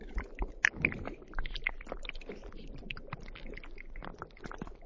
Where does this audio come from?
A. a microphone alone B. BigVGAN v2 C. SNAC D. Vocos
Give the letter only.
A